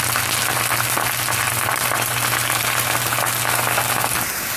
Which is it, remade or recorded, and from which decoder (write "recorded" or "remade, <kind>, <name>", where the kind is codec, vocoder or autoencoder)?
recorded